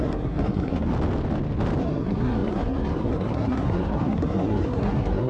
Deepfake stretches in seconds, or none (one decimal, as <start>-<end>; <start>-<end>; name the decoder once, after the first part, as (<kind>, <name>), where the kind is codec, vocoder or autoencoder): 0.0-0.9 (codec, SNAC); 1.8-5.3